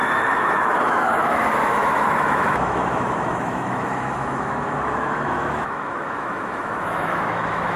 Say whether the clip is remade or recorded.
remade